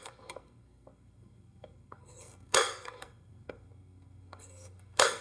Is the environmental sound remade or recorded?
remade